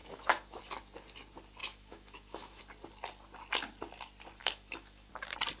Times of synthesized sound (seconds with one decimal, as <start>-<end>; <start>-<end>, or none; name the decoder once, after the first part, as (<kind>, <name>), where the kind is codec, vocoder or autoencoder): 0.0-0.6 (autoencoder, DAC-VAE); 1.6-2.6; 4.4-5.1